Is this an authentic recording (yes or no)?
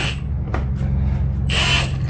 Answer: yes